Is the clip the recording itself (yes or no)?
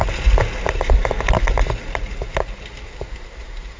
yes